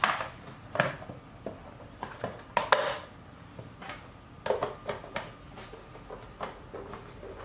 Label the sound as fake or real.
real